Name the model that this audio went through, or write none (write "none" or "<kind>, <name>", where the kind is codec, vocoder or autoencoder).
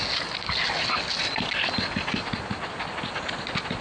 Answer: none